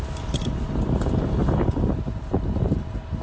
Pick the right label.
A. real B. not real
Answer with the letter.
A